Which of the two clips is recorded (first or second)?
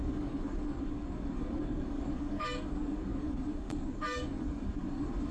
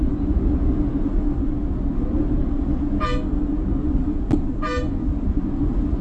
second